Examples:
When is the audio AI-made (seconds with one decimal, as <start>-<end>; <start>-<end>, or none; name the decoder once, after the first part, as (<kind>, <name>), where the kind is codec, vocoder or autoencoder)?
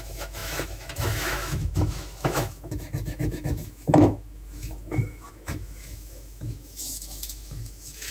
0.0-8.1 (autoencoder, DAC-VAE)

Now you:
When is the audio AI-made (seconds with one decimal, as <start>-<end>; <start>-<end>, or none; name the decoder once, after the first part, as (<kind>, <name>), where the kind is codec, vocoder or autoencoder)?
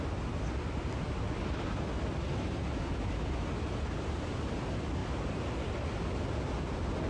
none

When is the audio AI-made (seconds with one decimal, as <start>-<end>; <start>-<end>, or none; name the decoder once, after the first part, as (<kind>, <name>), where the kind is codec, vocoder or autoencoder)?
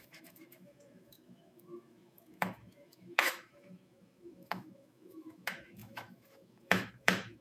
0.0-7.4 (autoencoder, DAC-VAE)